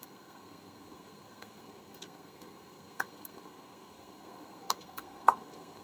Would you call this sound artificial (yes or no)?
yes